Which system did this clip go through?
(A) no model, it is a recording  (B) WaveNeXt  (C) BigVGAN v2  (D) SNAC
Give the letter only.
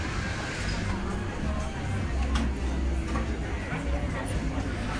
A